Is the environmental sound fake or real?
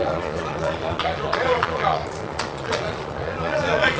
fake